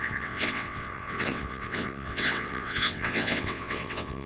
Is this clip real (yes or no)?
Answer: no